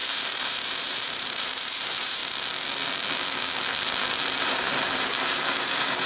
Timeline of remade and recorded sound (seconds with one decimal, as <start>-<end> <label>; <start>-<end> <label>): 0.0-2.2 remade; 2.2-4.4 recorded; 4.4-6.1 remade